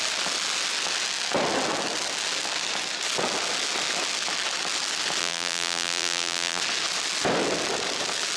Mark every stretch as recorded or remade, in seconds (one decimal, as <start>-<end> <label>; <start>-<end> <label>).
0.0-5.2 recorded; 5.2-6.6 remade; 6.6-8.4 recorded